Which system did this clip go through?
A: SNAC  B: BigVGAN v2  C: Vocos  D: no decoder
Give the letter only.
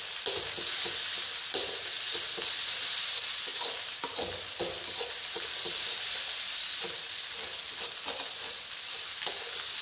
D